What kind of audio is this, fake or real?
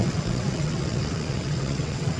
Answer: fake